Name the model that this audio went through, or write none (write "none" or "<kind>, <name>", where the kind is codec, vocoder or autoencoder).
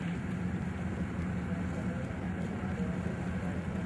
none